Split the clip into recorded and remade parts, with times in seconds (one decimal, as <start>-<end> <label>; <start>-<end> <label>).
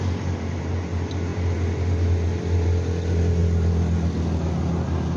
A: 0.0-5.2 recorded